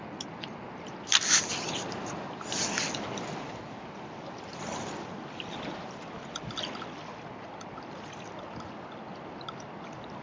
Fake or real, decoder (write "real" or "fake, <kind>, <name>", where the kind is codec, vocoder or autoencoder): real